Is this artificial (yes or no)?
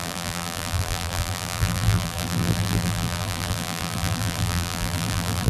yes